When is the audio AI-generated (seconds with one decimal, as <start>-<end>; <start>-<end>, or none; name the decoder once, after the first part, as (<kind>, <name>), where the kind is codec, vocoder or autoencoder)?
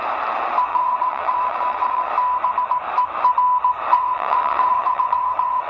0.7-2.1 (vocoder, WaveNeXt); 3.9-5.7